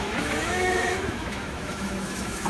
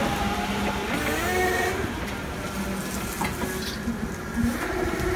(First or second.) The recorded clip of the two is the second